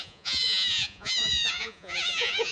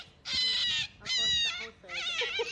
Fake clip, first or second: first